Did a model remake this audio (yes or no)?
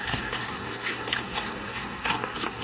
yes